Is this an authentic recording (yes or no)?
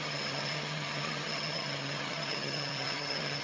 no